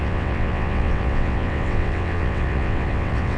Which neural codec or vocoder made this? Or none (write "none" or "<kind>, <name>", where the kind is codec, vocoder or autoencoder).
vocoder, WaveNeXt